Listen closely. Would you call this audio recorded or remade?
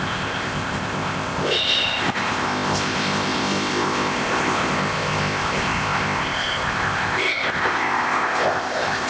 remade